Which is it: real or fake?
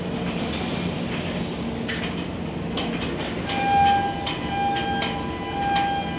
real